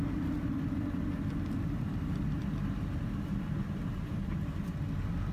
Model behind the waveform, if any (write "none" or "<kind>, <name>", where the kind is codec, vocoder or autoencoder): none